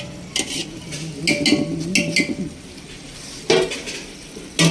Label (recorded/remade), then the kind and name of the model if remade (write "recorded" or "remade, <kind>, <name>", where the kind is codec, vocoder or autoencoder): recorded